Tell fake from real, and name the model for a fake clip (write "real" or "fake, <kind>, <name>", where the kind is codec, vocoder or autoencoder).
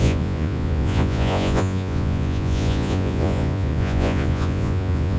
fake, vocoder, Vocos